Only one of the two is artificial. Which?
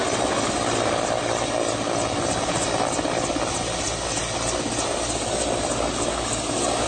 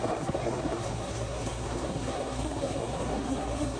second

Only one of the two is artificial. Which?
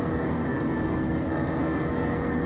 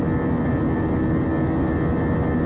first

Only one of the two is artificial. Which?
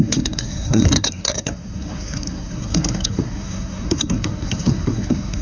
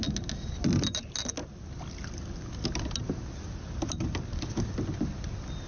first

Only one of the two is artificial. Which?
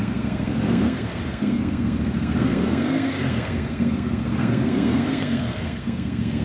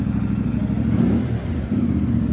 first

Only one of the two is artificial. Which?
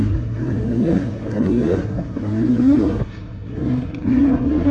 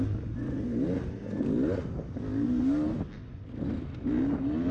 first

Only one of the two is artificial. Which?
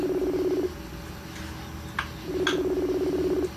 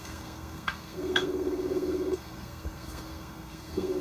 second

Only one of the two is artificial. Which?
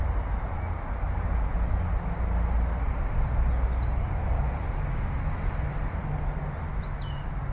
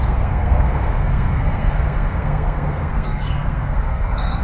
second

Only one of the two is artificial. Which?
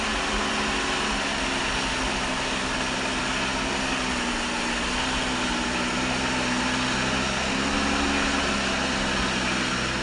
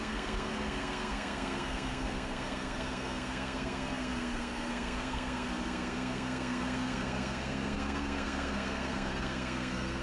second